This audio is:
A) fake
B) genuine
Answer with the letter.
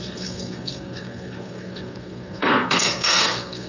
A